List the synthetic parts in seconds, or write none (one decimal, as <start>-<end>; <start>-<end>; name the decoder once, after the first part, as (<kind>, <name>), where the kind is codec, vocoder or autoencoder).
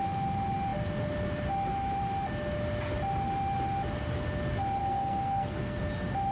4.8-5.8 (codec, SNAC)